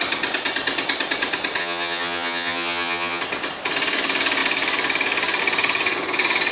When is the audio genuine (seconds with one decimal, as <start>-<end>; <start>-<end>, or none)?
0.0-1.6; 3.2-6.5